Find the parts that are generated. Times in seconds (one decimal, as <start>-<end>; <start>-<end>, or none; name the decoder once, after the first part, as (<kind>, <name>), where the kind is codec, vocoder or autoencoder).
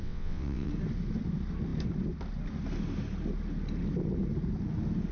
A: 0.0-0.7 (vocoder, WaveNeXt)